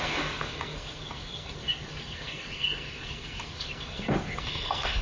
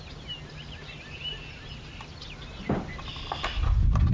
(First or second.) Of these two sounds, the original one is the second